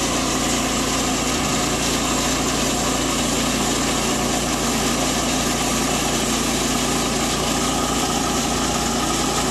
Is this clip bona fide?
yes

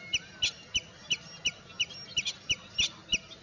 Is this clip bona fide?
yes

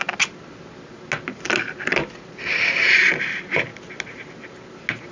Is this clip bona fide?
yes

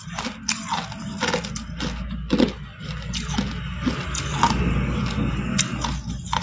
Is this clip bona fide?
yes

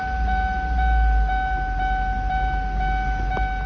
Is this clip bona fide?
yes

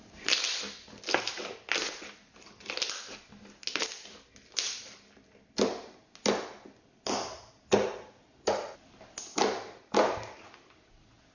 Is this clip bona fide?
yes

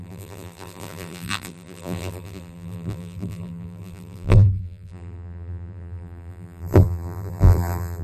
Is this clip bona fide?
no